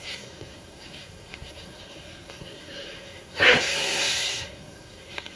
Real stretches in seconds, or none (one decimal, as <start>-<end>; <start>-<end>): none